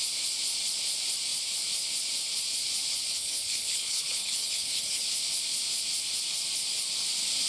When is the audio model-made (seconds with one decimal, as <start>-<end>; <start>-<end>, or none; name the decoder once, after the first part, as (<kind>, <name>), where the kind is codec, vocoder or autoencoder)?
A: 3.1-5.0 (codec, HILCodec)